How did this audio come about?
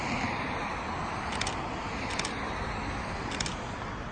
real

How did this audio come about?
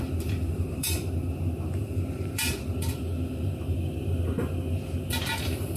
fake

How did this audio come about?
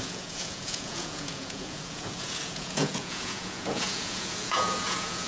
fake